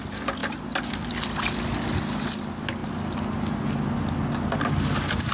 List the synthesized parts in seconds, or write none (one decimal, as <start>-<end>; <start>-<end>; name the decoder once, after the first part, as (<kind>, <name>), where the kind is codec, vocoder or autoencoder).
none